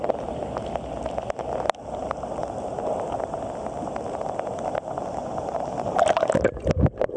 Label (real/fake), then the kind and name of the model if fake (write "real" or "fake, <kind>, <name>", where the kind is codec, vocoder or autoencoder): real